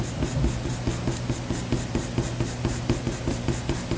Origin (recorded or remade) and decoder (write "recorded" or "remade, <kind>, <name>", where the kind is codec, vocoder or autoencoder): recorded